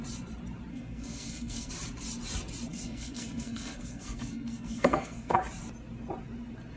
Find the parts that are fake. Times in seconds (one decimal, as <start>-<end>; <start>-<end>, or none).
0.7-1.7; 2.7-5.4